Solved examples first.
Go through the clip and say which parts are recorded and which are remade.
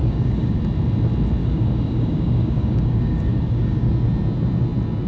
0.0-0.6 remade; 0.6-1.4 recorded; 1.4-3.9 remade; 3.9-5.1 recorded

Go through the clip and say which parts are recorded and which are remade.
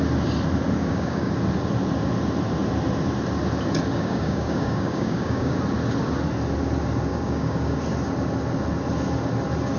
0.0-0.8 recorded; 0.8-1.3 remade; 1.3-3.9 recorded; 3.9-5.6 remade; 5.6-7.1 recorded; 7.1-7.8 remade; 7.8-9.8 recorded